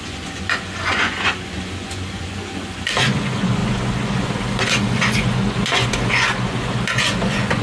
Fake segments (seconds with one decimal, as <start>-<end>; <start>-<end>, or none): 0.0-7.6